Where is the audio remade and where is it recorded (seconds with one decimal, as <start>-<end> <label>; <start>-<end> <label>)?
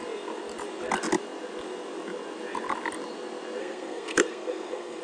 0.0-3.6 recorded; 3.6-5.0 remade